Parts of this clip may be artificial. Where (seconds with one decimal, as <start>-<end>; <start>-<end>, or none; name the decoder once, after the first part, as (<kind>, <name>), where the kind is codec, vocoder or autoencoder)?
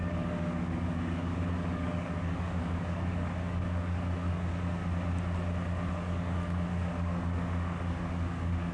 0.0-4.8 (codec, DAC); 5.9-8.7